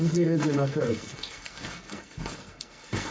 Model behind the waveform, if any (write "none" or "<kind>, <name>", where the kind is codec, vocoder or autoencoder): codec, SNAC